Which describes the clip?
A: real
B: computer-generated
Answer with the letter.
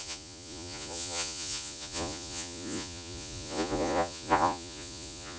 B